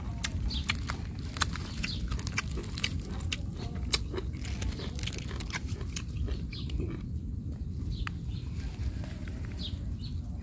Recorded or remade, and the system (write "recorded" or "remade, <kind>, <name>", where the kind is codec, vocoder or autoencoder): recorded